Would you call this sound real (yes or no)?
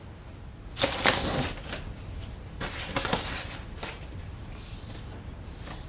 yes